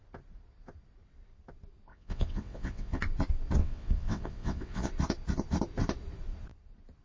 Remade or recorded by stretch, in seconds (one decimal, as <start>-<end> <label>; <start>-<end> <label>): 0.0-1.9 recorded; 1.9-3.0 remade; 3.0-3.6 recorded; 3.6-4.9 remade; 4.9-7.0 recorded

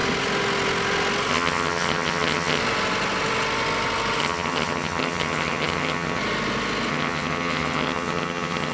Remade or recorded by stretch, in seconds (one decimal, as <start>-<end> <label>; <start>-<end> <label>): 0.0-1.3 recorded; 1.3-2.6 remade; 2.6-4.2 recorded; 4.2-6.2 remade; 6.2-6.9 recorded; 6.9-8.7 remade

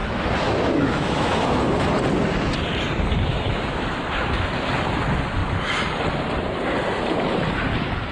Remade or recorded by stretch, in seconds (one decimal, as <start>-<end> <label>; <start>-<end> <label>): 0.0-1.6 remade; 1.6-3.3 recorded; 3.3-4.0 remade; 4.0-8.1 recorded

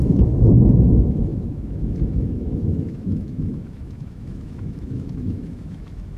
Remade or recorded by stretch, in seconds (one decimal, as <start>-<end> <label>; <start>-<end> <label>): 0.0-6.2 remade